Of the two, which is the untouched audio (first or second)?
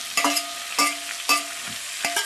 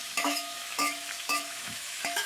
first